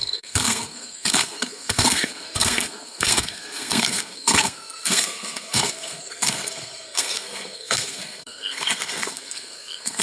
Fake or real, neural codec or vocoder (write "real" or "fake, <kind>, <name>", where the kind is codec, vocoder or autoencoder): fake, codec, SNAC